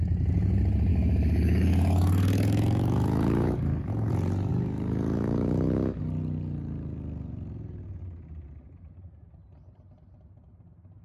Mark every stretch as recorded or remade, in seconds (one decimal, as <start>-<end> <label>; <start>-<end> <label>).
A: 0.0-0.9 recorded; 0.9-4.1 remade; 4.1-4.5 recorded; 4.5-6.0 remade; 6.0-11.0 recorded

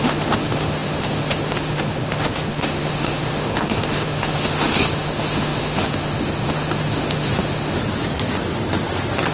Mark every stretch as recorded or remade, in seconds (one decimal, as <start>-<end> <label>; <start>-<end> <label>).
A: 0.0-7.8 remade; 7.8-9.3 recorded

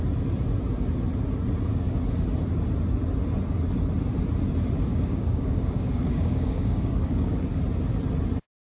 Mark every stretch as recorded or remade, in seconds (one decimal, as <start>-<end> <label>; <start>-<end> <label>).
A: 0.0-4.9 recorded; 4.9-7.6 remade; 7.6-8.6 recorded

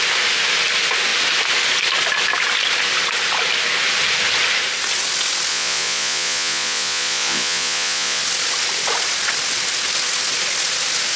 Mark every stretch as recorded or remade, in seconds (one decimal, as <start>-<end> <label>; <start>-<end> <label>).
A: 0.0-5.5 recorded; 5.5-8.2 remade; 8.2-11.2 recorded

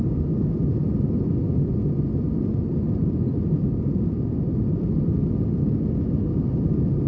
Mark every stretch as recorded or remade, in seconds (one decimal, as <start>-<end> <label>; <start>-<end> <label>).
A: 0.0-7.1 recorded

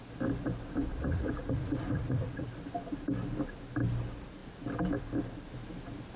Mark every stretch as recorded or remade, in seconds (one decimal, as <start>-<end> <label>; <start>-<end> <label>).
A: 0.0-0.9 recorded; 0.9-2.5 remade; 2.5-6.2 recorded

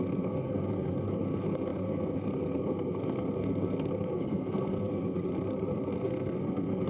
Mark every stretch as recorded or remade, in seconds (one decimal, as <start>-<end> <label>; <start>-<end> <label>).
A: 0.0-5.3 remade; 5.3-5.9 recorded; 5.9-6.9 remade